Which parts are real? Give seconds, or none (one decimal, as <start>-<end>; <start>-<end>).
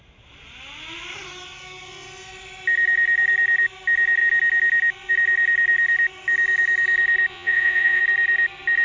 0.0-7.3; 8.0-8.8